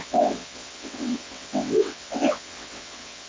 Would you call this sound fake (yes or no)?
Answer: yes